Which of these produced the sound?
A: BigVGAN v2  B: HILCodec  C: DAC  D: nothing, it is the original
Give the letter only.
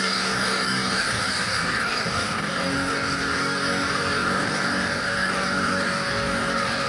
C